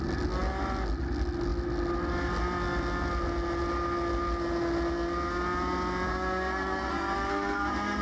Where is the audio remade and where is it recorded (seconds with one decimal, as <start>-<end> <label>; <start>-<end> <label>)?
0.0-6.1 recorded; 6.1-8.0 remade